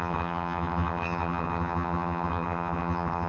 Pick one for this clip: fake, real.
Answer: fake